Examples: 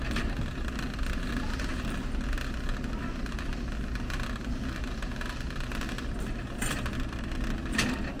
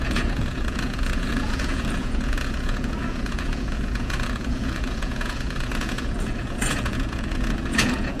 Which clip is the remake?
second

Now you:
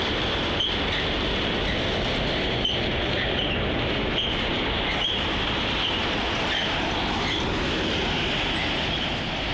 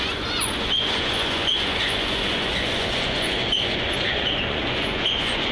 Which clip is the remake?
second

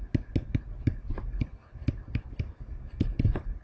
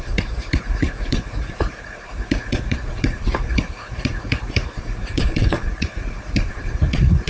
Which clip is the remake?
second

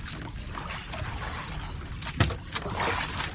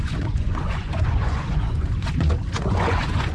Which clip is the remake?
second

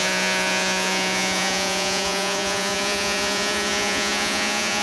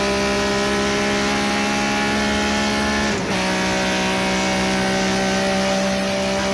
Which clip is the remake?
first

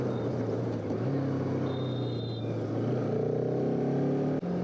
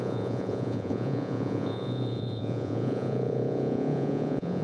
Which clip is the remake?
second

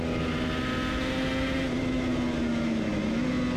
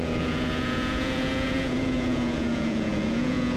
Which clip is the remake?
second